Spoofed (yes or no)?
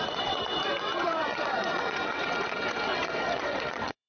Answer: yes